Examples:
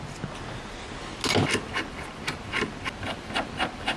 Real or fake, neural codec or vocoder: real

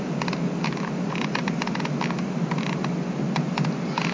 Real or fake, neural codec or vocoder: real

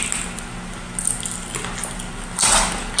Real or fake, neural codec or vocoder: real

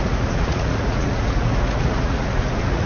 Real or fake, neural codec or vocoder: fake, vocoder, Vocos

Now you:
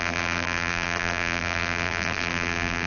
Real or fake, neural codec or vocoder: fake, vocoder, BigVGAN v2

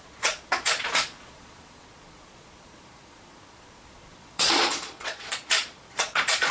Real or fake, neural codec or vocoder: fake, vocoder, Vocos